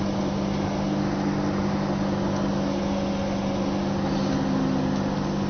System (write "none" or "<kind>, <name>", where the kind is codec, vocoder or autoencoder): none